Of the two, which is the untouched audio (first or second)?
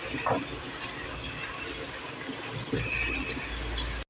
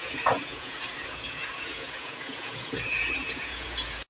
first